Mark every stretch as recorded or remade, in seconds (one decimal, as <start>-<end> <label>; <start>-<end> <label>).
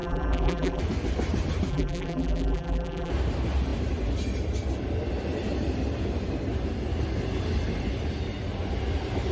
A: 0.0-0.8 remade; 0.8-1.7 recorded; 1.7-3.1 remade; 3.1-9.3 recorded